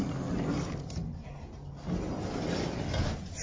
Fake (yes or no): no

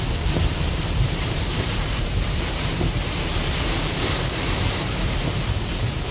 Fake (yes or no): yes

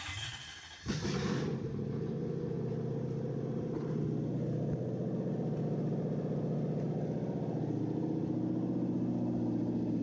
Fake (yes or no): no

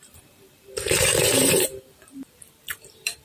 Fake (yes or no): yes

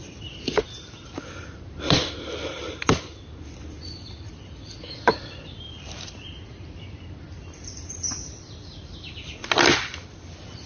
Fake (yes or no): yes